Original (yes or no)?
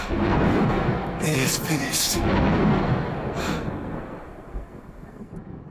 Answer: no